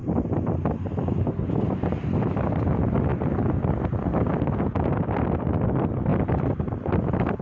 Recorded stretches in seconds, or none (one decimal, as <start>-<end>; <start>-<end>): 0.0-7.4